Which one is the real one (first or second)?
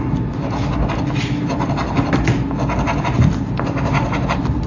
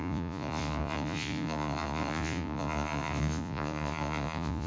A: first